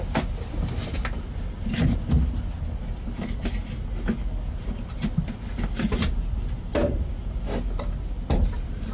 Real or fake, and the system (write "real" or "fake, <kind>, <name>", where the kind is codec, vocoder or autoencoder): real